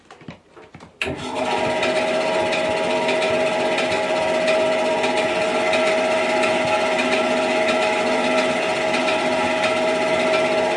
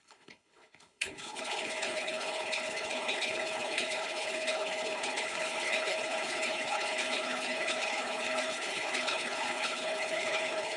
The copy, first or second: second